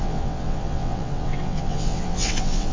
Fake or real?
fake